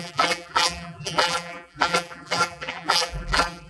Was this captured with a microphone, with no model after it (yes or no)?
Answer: no